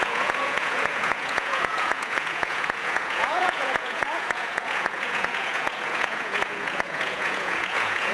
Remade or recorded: remade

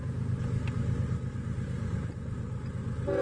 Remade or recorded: recorded